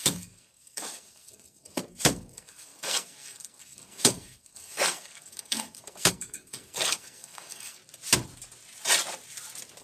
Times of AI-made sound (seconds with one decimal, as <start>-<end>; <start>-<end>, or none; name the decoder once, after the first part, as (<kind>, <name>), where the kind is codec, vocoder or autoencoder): 0.0-7.8 (codec, SNAC)